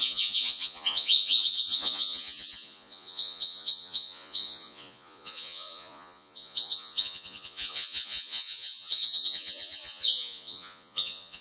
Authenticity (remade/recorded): remade